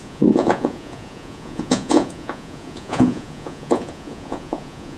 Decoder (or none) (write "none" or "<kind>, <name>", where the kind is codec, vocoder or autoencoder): vocoder, Vocos